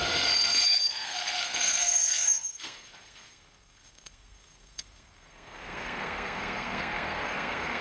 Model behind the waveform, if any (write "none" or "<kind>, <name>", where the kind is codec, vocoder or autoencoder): codec, SNAC